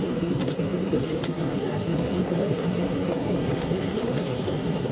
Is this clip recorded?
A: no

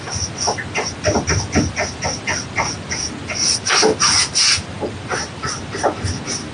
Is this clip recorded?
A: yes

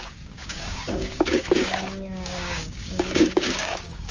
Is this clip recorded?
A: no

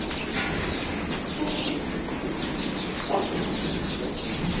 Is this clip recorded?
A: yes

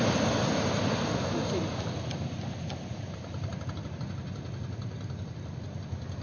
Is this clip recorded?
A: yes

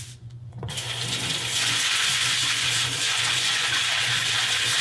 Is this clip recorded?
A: no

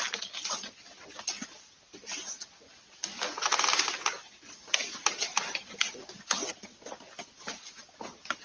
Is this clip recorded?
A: yes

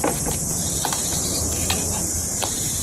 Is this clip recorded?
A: no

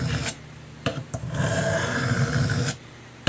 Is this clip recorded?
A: yes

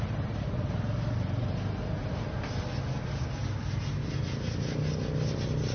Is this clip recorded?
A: yes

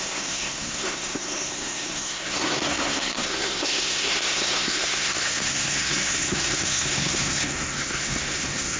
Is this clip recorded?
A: no